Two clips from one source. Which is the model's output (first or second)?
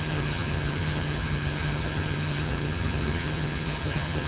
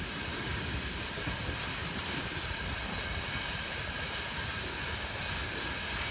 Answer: first